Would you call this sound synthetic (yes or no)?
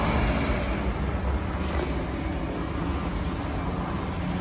no